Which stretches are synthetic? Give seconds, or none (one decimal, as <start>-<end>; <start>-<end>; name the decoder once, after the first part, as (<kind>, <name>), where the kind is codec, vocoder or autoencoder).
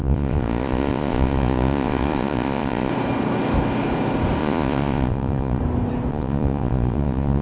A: 0.0-2.9 (vocoder, Vocos); 4.4-5.6; 6.1-7.4